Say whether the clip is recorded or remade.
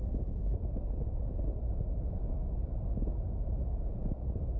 recorded